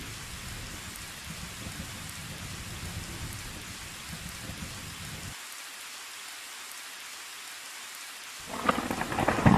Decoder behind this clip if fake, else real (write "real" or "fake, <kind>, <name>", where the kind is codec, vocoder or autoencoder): real